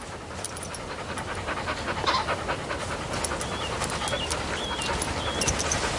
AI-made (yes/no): no